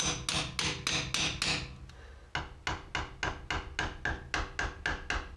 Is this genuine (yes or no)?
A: yes